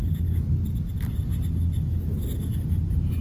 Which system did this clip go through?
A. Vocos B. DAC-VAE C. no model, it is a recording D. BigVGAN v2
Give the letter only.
C